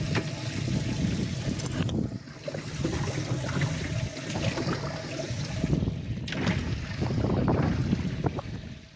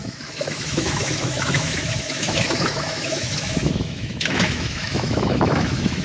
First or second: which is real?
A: first